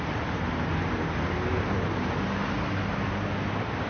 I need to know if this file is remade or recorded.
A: recorded